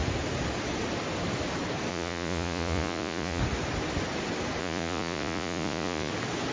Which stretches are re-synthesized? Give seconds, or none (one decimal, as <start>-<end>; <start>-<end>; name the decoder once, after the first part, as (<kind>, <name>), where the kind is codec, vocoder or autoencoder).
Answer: 1.9-3.4 (vocoder, Vocos); 4.6-6.1